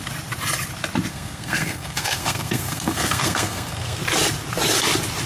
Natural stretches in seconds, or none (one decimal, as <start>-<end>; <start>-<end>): 0.0-1.1; 4.0-5.3